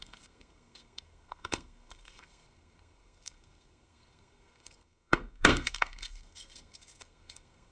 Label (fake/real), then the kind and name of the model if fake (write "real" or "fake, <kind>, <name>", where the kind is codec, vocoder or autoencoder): fake, codec, SNAC